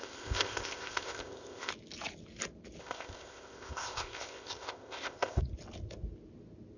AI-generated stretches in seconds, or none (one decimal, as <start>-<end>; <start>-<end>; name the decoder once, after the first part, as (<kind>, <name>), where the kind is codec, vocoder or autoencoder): 0.0-1.7 (codec, ZipCodec); 2.8-5.4